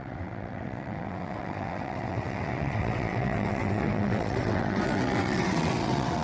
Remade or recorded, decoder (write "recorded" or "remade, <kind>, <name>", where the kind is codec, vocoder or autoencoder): remade, vocoder, WaveNeXt